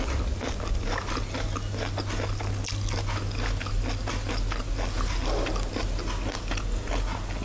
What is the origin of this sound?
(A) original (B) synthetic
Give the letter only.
A